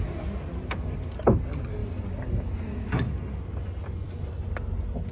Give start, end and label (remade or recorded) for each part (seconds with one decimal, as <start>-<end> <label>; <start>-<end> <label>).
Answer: 0.0-5.1 recorded